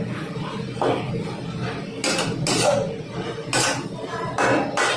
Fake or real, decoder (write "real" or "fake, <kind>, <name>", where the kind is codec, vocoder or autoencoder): real